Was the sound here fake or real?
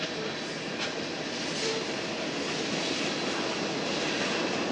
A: real